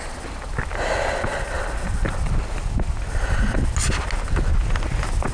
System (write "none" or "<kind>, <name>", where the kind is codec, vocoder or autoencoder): none